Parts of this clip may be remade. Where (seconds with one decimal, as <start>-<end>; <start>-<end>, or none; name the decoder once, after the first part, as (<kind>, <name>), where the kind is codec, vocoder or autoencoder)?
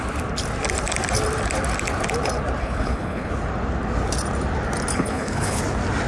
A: 2.6-3.3 (codec, HILCodec); 4.9-5.6